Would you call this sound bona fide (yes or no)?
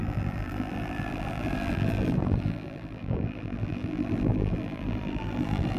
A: no